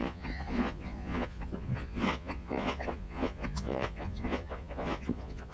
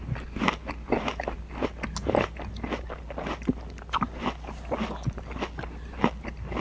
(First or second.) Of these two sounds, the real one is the second